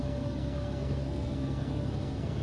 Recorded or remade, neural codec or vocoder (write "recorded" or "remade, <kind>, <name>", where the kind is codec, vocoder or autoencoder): remade, codec, SNAC